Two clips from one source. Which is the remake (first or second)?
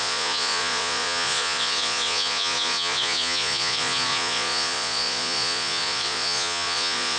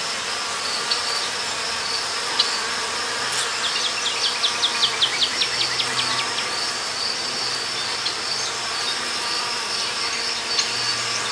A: first